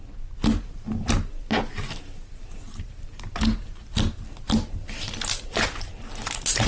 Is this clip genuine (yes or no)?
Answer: yes